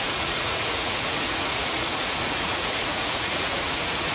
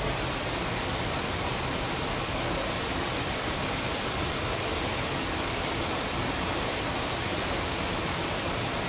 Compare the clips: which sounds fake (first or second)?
first